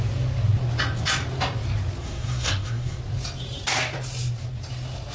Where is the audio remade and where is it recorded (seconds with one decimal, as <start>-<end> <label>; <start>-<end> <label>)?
0.0-2.0 recorded; 2.0-3.0 remade; 3.0-5.1 recorded